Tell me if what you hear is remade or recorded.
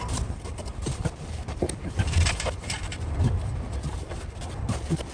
remade